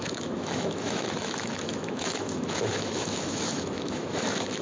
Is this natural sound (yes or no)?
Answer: no